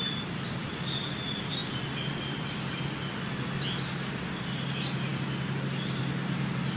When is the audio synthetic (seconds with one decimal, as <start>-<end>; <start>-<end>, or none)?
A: none